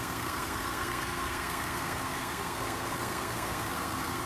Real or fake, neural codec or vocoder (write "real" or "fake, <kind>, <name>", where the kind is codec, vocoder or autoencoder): fake, codec, SNAC